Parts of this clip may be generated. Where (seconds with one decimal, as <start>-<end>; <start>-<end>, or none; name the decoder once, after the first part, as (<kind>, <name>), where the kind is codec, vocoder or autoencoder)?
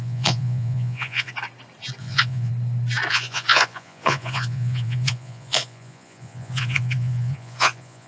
0.0-1.3 (vocoder, Vocos); 2.0-2.5; 3.1-8.1